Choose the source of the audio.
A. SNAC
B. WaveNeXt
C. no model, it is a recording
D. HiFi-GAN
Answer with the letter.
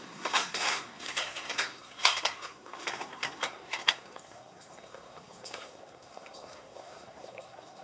A